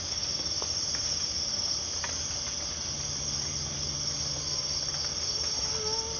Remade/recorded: recorded